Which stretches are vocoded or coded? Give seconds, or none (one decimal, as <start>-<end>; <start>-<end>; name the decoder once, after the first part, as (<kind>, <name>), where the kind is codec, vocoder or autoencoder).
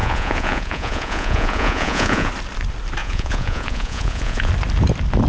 0.0-2.3 (vocoder, Vocos); 3.0-4.5